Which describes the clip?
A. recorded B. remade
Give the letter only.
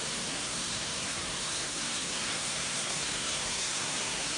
B